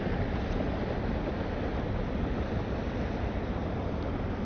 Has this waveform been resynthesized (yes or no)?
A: no